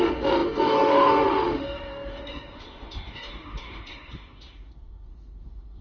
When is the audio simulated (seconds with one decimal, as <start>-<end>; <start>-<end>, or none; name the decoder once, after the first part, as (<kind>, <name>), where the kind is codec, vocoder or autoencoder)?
0.0-5.8 (autoencoder, DAC-VAE)